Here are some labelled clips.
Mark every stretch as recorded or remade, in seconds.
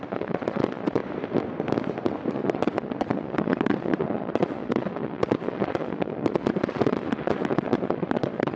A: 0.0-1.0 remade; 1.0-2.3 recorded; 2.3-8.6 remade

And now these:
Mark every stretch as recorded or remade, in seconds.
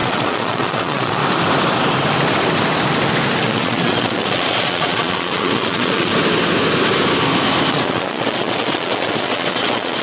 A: 0.0-1.2 remade; 1.2-3.4 recorded; 3.4-6.1 remade; 6.1-7.7 recorded; 7.7-10.0 remade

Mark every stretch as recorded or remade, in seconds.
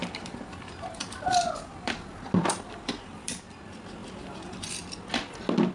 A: 0.0-3.4 remade; 3.4-4.0 recorded; 4.0-5.0 remade; 5.0-5.7 recorded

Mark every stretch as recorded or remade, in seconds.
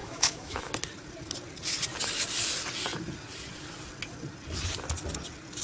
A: 0.0-0.7 remade; 0.7-5.6 recorded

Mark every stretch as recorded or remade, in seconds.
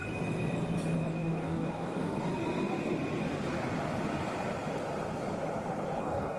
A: 0.0-1.1 recorded; 1.1-2.3 remade; 2.3-6.0 recorded; 6.0-6.4 remade